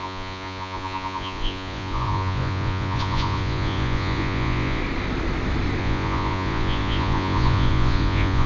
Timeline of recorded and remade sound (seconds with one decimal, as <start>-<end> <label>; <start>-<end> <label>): 0.0-4.8 remade; 4.8-5.8 recorded; 5.8-8.5 remade